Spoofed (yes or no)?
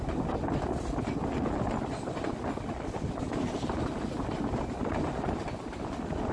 no